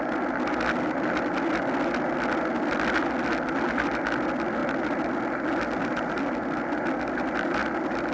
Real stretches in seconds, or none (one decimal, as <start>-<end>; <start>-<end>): 0.0-8.1